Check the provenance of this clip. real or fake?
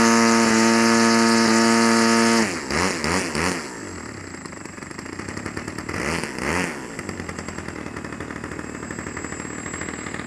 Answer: real